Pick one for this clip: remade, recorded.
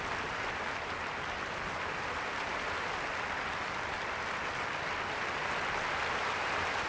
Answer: recorded